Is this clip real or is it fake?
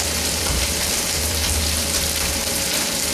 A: fake